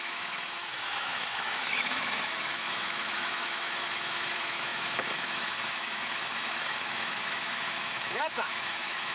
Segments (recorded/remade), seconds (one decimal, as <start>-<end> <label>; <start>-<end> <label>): 0.0-9.1 remade